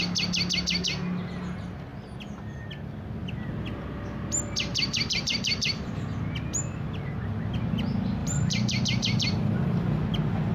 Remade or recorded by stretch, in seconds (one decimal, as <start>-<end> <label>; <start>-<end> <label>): 0.0-4.7 recorded; 4.7-5.9 remade; 5.9-8.2 recorded; 8.2-9.5 remade; 9.5-10.5 recorded